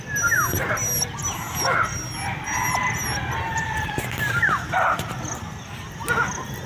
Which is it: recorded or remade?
recorded